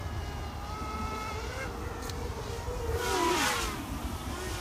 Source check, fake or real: real